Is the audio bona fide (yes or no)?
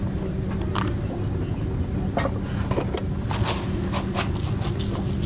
yes